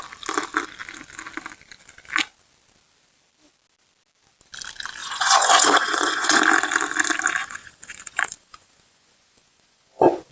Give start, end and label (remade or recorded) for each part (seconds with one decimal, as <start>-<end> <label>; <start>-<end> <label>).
0.0-5.0 recorded; 5.0-6.4 remade; 6.4-7.4 recorded; 7.4-10.3 remade